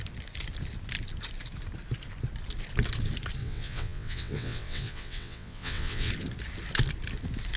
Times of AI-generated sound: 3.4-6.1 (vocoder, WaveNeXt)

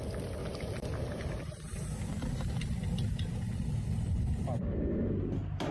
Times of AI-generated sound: none

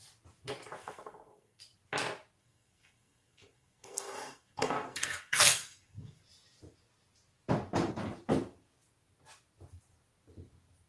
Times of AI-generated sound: 0.8-1.6 (codec, SNAC); 2.4-6.2

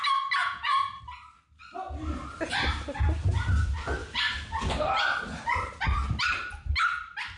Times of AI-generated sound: 0.4-1.0 (vocoder, Vocos)

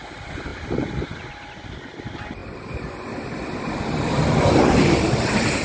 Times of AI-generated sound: none